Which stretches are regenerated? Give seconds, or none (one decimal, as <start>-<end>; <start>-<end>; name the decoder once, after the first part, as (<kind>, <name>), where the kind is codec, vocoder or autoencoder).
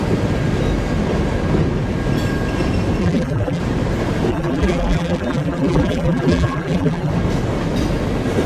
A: 3.0-3.6 (vocoder, BigVGAN v2); 4.3-7.1